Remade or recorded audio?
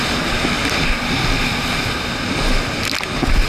recorded